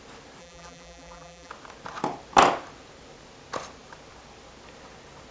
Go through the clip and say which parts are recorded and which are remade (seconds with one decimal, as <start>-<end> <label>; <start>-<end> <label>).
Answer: 0.0-0.4 recorded; 0.4-1.5 remade; 1.5-5.3 recorded